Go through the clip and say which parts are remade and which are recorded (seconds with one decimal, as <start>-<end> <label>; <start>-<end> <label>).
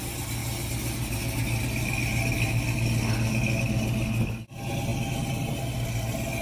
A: 0.0-6.4 recorded